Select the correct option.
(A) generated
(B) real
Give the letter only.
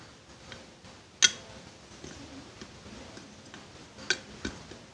B